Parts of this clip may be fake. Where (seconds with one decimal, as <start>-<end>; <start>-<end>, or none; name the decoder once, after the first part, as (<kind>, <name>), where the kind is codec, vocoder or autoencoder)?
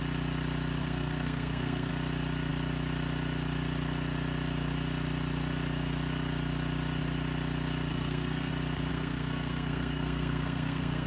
0.8-1.9 (codec, SNAC); 7.9-8.5; 8.9-11.1